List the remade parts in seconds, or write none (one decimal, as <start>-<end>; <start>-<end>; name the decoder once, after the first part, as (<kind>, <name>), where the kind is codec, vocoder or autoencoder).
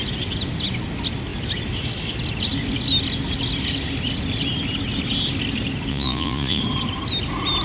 5.9-6.6 (vocoder, Vocos)